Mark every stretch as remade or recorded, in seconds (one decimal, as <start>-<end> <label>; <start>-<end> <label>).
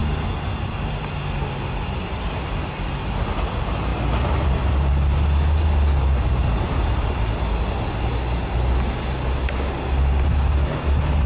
0.0-6.4 recorded; 6.4-7.4 remade; 7.4-11.3 recorded